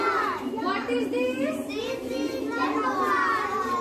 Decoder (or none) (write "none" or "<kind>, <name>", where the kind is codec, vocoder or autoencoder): vocoder, BigVGAN v2